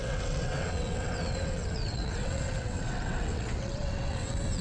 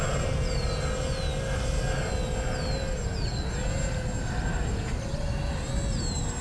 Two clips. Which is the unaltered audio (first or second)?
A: second